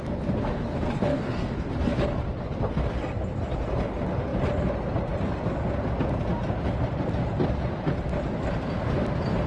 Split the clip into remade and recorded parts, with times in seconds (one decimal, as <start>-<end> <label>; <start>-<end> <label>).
0.0-1.1 recorded; 1.1-1.7 remade; 1.7-9.5 recorded